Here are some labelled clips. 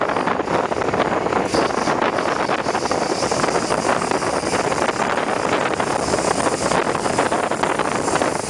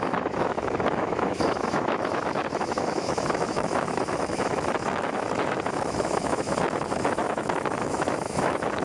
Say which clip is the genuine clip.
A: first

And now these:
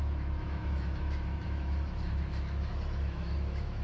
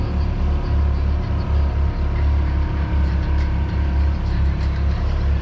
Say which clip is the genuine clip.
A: second